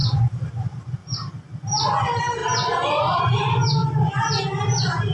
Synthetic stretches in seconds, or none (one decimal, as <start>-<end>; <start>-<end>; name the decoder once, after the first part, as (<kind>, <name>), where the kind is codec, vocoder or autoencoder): 0.0-1.0 (vocoder, BigVGAN v2); 2.0-2.4; 3.2-3.8; 4.6-5.1